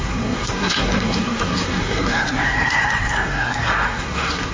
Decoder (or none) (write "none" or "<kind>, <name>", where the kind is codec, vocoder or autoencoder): codec, SNAC